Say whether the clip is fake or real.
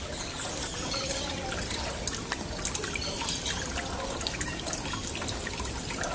real